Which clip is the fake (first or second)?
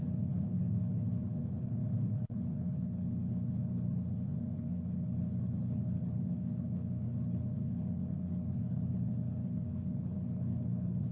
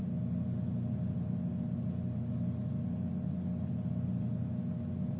first